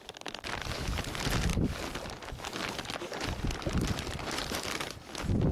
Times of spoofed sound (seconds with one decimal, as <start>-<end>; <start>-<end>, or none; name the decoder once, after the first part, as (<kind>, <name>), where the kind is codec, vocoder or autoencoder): none

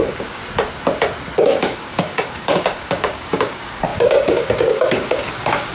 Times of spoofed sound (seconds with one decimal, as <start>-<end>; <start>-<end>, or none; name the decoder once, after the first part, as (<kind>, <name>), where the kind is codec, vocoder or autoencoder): 0.0-0.4 (codec, DAC); 1.4-5.7

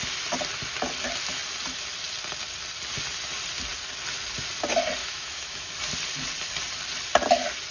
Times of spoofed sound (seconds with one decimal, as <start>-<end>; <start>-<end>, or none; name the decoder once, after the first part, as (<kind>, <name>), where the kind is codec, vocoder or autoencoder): 5.0-5.7 (autoencoder, DAC-VAE)

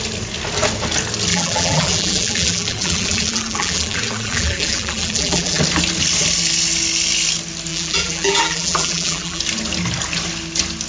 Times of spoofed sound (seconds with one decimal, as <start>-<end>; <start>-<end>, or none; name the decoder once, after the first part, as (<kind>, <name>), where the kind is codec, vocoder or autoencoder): 1.3-5.6 (vocoder, BigVGAN v2); 7.7-9.4

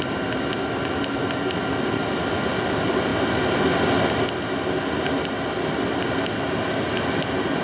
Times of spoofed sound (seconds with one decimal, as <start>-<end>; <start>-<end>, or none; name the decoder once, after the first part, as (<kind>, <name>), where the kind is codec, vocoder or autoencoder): none

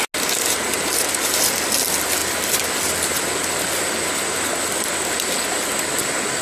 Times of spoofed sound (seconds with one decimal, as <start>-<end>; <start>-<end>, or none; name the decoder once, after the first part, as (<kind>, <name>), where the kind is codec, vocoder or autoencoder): none

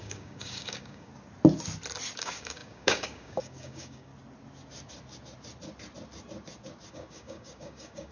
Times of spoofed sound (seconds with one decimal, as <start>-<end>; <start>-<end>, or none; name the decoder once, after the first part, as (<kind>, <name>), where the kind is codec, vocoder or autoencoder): 0.0-1.1 (codec, DAC); 2.2-4.1; 6.9-8.1